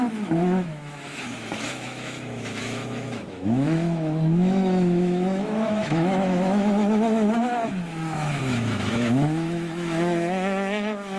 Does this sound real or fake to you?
fake